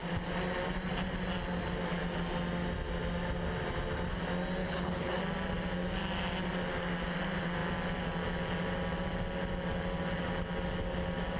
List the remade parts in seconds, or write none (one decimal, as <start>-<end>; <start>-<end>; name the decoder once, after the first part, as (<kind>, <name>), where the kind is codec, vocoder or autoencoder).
4.6-5.2 (codec, HILCodec)